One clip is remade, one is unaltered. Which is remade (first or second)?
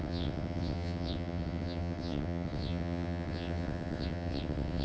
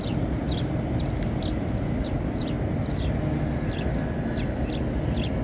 first